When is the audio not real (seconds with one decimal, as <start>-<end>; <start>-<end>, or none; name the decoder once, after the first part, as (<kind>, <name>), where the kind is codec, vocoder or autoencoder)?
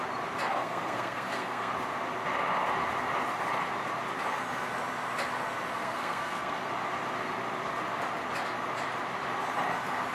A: 0.5-1.7 (codec, SNAC); 5.8-6.7